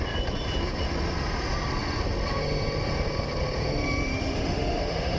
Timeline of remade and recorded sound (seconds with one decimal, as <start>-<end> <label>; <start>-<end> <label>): 0.0-4.1 recorded; 4.1-5.2 remade

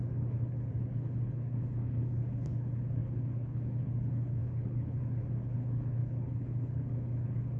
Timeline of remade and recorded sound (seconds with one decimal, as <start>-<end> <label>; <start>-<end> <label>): 0.0-7.6 remade